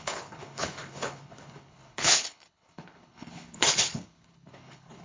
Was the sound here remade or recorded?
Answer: remade